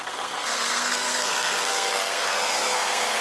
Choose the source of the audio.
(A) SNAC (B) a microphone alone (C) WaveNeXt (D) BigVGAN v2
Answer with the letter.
A